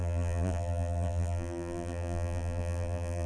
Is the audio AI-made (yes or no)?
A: yes